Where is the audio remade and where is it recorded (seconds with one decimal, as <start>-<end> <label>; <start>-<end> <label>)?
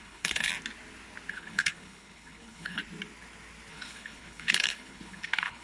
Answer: 0.0-0.5 remade; 0.5-1.3 recorded; 1.3-2.8 remade; 2.8-3.7 recorded; 3.7-5.6 remade